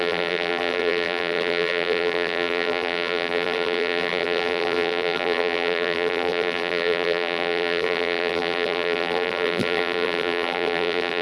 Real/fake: fake